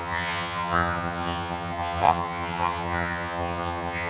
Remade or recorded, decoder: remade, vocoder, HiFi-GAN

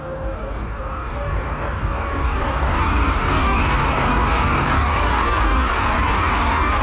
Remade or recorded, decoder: remade, codec, DAC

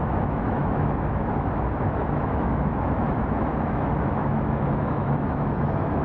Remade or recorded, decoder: remade, autoencoder, DAC-VAE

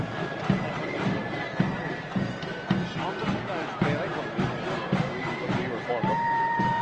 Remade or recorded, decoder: recorded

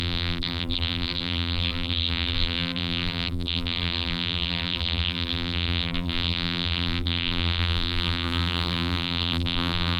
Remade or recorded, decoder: remade, vocoder, BigVGAN v2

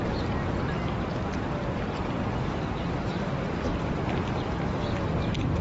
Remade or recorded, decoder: recorded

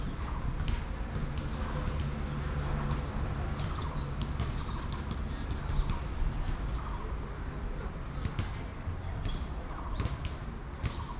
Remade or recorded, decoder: recorded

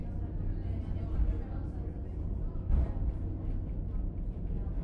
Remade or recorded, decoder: recorded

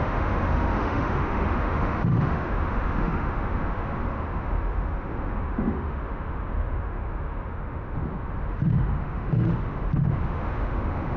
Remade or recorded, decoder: remade, autoencoder, DAC-VAE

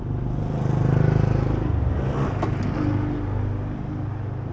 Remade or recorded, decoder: recorded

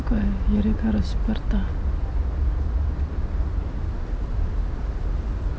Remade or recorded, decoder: recorded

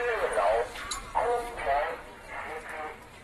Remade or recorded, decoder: remade, vocoder, BigVGAN v2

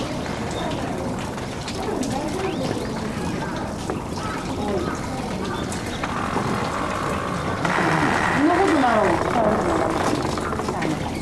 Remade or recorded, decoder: recorded